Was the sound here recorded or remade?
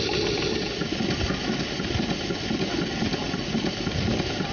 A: recorded